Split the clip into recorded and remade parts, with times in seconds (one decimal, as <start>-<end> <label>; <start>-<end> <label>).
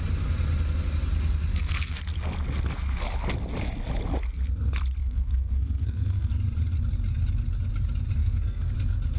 0.0-1.5 recorded; 1.5-2.0 remade; 2.0-5.0 recorded; 5.0-6.3 remade; 6.3-8.2 recorded; 8.2-8.7 remade; 8.7-9.2 recorded